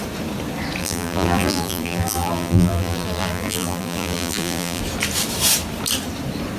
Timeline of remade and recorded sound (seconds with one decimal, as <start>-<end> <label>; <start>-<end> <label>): 0.0-0.8 recorded; 0.8-4.8 remade; 4.8-6.6 recorded